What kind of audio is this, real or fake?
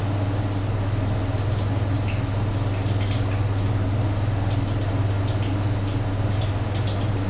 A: real